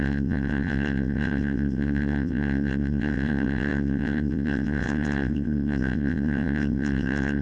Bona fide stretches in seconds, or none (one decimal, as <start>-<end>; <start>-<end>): none